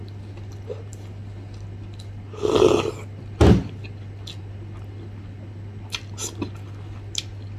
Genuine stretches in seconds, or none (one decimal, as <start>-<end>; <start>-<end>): 0.0-7.6